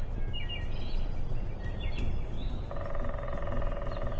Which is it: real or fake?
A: real